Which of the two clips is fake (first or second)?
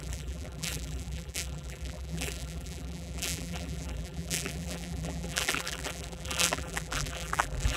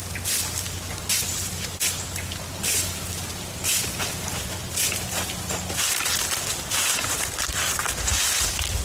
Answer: first